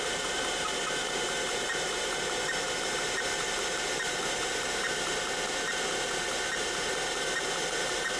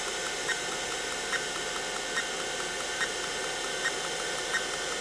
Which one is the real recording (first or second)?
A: second